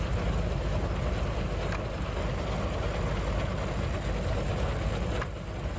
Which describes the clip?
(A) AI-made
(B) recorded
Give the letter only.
B